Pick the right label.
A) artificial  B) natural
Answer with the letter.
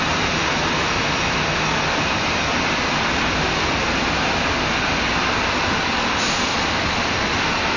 B